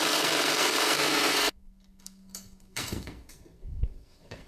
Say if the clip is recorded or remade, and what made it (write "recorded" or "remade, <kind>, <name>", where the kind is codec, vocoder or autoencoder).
remade, codec, SNAC